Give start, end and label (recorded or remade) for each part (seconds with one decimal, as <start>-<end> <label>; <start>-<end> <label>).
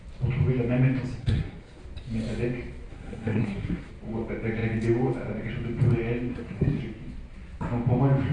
0.0-1.2 recorded; 1.2-1.8 remade; 1.8-2.9 recorded; 2.9-3.9 remade; 3.9-6.3 recorded; 6.3-6.8 remade; 6.8-8.3 recorded